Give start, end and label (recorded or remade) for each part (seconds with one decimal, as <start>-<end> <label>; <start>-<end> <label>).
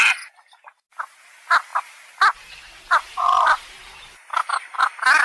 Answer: 0.0-5.2 recorded